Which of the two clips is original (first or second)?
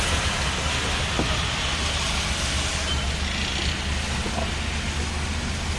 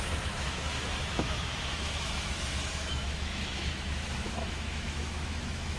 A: first